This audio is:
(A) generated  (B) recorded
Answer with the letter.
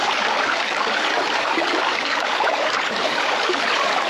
A